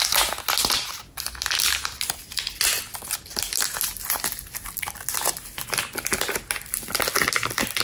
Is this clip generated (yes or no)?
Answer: no